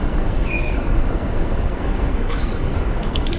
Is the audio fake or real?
fake